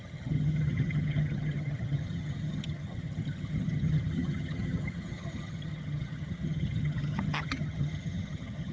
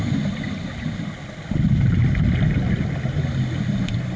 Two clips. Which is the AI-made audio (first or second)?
first